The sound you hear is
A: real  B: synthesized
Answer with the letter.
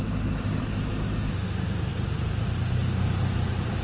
A